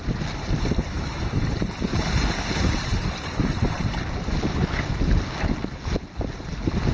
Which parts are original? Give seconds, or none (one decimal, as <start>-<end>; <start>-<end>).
0.0-0.9; 1.5-6.9